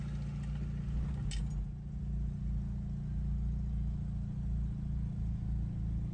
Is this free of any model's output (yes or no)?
yes